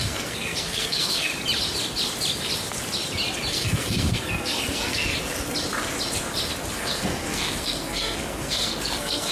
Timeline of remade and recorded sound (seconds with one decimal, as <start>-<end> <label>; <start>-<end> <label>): 0.0-1.3 remade; 1.3-3.5 recorded; 3.5-5.1 remade; 5.1-6.7 recorded; 6.7-9.3 remade